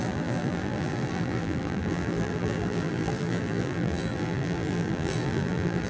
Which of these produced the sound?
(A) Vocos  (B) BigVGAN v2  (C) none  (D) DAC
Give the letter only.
B